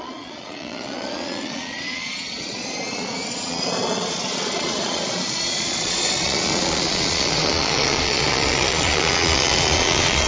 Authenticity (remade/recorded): remade